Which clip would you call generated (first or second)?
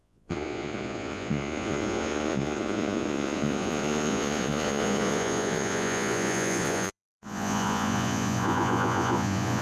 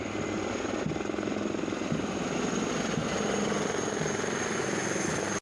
first